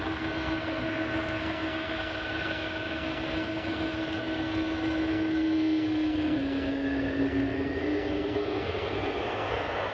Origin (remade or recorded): remade